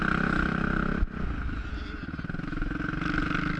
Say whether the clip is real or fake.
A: real